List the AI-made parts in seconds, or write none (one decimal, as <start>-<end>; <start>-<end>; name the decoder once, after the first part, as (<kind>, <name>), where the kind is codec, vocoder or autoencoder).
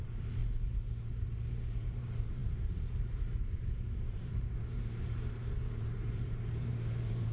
0.0-0.4 (vocoder, BigVGAN v2); 1.5-7.3